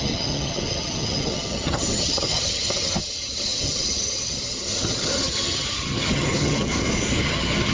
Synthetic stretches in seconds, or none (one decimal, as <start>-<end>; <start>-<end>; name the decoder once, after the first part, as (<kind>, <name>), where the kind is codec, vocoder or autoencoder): 0.0-6.7 (vocoder, HiFi-GAN); 7.3-7.7